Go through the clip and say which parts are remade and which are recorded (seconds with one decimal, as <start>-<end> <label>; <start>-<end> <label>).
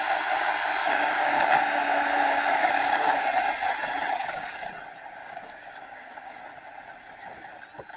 0.0-0.8 recorded; 0.8-1.6 remade; 1.6-2.6 recorded; 2.6-3.2 remade; 3.2-4.2 recorded; 4.2-4.7 remade; 4.7-5.2 recorded; 5.2-6.4 remade; 6.4-8.0 recorded